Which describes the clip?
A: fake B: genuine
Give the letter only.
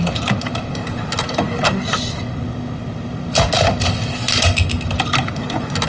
B